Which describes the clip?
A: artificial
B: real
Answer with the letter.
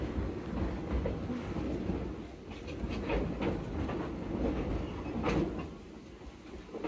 B